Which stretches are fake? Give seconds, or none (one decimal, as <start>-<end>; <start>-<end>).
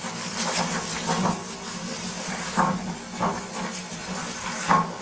1.7-2.7; 4.2-5.0